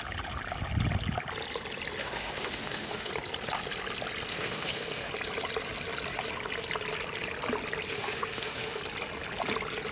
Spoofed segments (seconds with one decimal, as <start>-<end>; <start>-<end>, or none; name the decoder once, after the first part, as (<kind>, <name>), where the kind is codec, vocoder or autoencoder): 2.0-3.1 (autoencoder, DAC-VAE); 4.3-5.1; 7.9-8.8